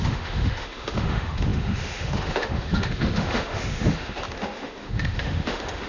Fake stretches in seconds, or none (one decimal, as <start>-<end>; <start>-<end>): 0.0-5.9